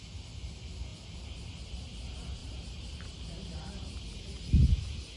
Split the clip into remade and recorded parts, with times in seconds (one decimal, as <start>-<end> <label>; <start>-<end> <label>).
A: 0.0-2.4 recorded; 2.4-4.4 remade; 4.4-5.2 recorded